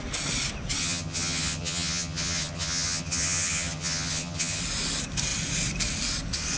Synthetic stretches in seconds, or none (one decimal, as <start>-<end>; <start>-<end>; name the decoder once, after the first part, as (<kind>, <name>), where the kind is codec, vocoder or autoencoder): 0.8-4.6 (vocoder, HiFi-GAN)